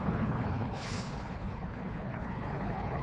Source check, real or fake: fake